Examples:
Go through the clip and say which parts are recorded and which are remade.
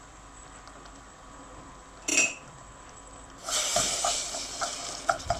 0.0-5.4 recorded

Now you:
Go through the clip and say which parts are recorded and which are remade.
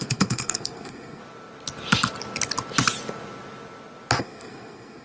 0.0-1.2 remade; 1.2-4.2 recorded; 4.2-5.0 remade